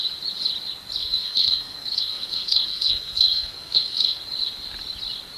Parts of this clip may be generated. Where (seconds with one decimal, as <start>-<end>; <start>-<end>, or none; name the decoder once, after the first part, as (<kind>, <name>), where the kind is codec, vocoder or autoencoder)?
1.0-4.2 (codec, SNAC)